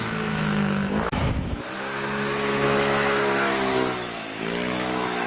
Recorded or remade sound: remade